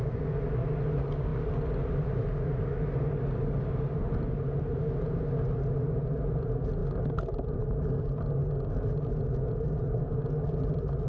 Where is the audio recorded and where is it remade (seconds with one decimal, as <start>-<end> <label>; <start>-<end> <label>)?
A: 0.0-11.1 recorded